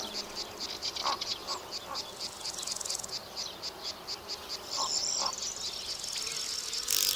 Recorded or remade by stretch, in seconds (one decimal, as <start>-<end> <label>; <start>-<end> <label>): 0.0-7.2 recorded